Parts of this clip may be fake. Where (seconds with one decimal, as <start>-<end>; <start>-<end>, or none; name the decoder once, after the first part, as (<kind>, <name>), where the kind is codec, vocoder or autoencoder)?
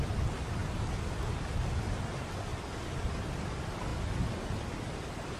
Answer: none